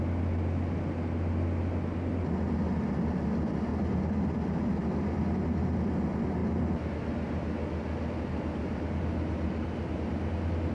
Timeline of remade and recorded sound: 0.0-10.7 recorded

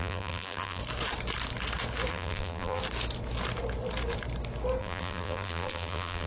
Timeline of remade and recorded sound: 0.0-0.8 remade; 0.8-2.1 recorded; 2.1-2.8 remade; 2.8-4.8 recorded; 4.8-6.3 remade

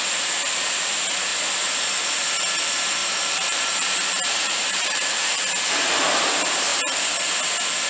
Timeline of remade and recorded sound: 0.0-3.0 recorded; 3.0-5.3 remade; 5.3-7.9 recorded

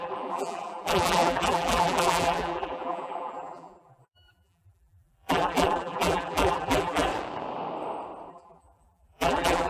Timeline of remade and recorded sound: 0.0-7.1 remade; 7.1-8.3 recorded; 8.3-9.7 remade

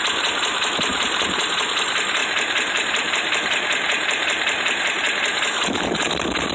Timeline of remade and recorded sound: 0.0-0.9 recorded; 0.9-1.4 remade; 1.4-2.2 recorded; 2.2-6.1 remade; 6.1-6.5 recorded